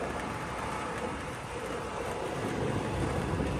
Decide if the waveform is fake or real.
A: fake